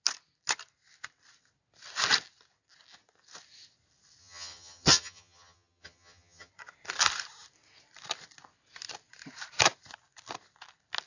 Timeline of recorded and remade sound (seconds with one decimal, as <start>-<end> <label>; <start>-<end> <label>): 0.0-4.2 recorded; 4.2-6.5 remade; 6.5-11.1 recorded